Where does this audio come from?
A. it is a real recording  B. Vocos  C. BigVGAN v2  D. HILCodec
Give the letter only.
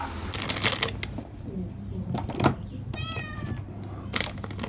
A